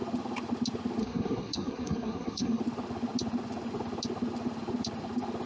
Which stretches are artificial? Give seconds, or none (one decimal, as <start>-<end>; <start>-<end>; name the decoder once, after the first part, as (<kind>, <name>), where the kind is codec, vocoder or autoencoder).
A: 1.0-2.6 (codec, SNAC)